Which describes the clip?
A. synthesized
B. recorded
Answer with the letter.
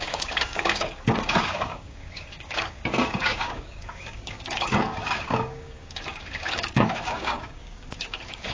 A